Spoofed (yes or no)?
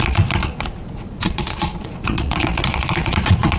yes